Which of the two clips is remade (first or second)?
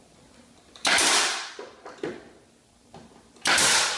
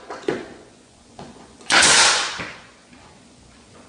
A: second